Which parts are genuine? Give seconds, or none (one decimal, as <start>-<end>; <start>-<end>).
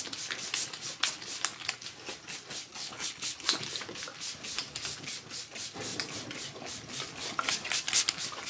0.0-2.8; 3.6-8.5